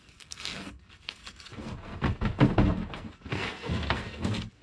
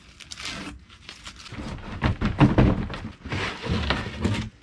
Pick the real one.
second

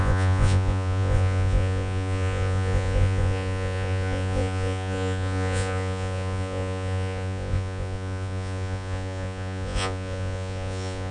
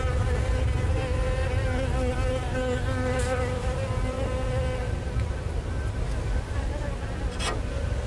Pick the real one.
second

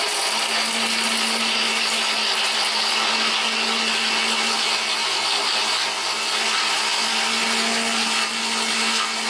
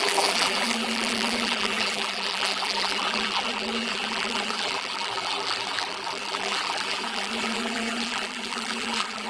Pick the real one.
first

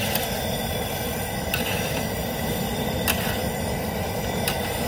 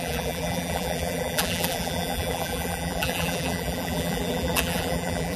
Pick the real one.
first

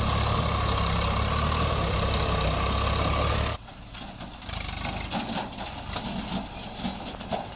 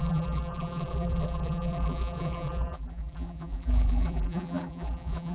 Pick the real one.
first